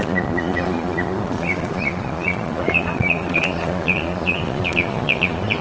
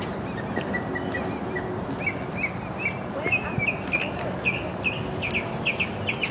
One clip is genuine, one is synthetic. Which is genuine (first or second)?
second